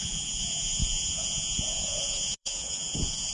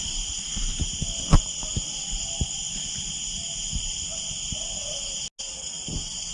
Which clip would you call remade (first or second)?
first